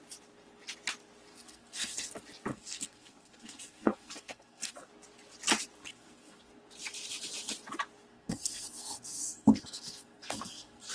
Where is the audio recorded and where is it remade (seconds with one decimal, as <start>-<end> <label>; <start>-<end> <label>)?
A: 0.0-1.3 recorded; 1.3-2.1 remade; 2.1-2.5 recorded; 2.5-4.9 remade; 4.9-5.8 recorded; 5.8-6.5 remade; 6.5-8.1 recorded; 8.1-10.9 remade